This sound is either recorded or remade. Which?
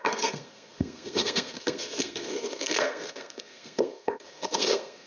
remade